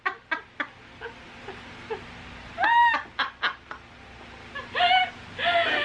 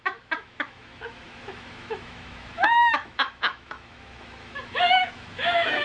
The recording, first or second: first